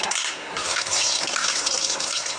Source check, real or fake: fake